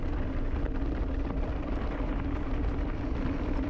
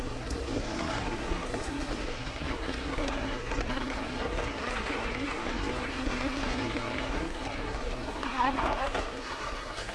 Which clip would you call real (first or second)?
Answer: first